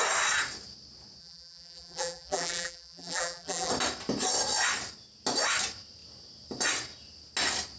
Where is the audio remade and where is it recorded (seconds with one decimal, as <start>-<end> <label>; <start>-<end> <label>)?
0.0-1.2 recorded; 1.2-3.7 remade; 3.7-7.8 recorded